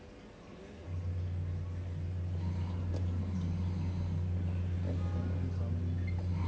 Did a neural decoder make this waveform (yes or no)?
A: no